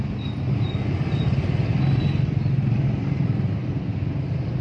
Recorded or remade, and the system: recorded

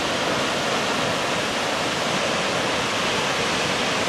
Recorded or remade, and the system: recorded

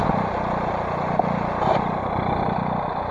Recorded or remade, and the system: recorded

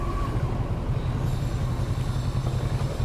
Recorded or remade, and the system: recorded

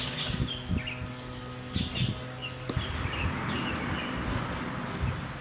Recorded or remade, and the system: recorded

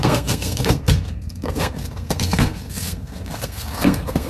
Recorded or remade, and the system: remade, codec, SNAC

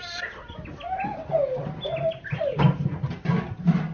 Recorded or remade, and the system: recorded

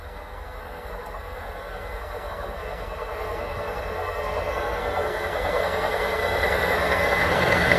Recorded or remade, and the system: remade, codec, SNAC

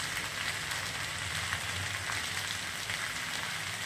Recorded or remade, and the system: recorded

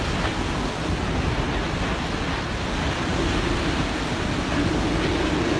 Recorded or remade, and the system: recorded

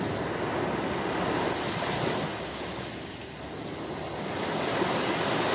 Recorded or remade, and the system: recorded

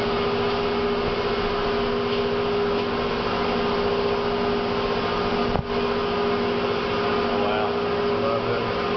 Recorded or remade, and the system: recorded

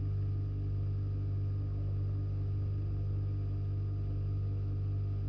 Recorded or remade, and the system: recorded